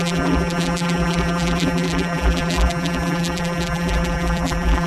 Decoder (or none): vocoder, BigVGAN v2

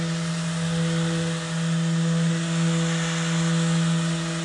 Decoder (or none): none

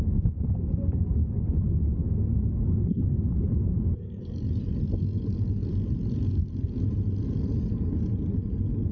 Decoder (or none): none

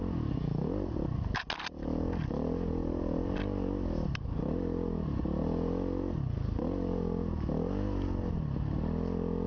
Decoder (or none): none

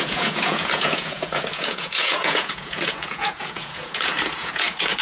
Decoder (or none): vocoder, Vocos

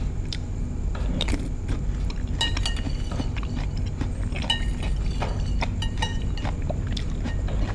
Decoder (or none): none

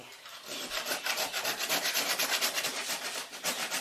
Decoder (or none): vocoder, BigVGAN v2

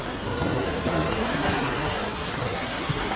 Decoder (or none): codec, SNAC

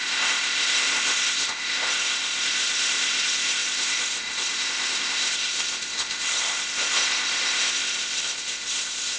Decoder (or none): codec, ZipCodec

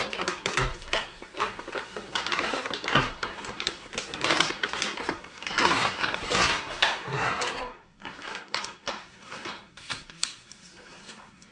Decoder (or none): codec, SNAC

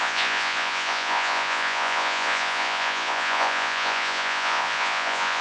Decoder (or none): vocoder, Vocos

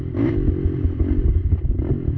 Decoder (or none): none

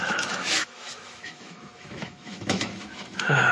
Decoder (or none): autoencoder, DAC-VAE